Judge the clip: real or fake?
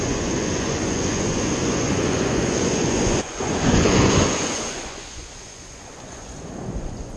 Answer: fake